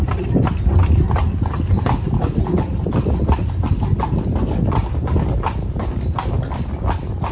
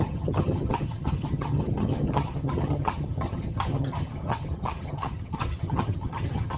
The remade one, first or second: second